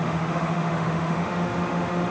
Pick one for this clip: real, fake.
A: fake